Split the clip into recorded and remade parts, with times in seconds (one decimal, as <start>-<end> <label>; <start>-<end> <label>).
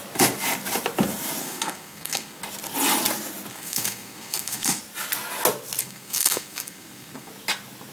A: 0.0-1.4 recorded; 1.4-2.4 remade; 2.4-3.5 recorded; 3.5-4.8 remade; 4.8-5.8 recorded; 5.8-7.3 remade; 7.3-7.9 recorded